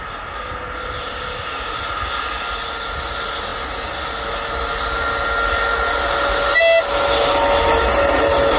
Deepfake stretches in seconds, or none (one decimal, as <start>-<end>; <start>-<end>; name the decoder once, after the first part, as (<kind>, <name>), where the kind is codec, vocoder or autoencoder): none

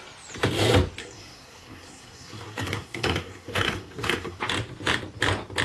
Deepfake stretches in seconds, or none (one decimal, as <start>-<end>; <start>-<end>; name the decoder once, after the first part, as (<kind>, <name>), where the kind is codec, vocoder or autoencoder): 1.0-4.4 (codec, SNAC)

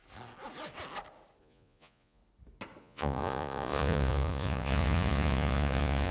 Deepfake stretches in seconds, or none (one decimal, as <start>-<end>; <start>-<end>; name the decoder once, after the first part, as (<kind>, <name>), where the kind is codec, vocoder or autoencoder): 1.4-2.2 (vocoder, Vocos); 2.8-6.1

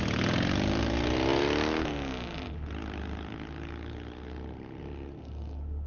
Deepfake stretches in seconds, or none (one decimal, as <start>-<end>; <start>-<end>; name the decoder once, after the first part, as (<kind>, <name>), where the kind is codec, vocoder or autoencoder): none

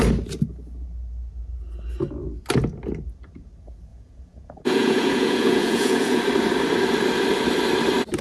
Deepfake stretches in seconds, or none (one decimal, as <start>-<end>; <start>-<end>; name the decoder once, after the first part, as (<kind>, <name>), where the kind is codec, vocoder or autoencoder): 3.9-6.2 (vocoder, Vocos)